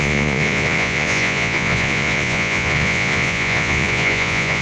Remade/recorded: remade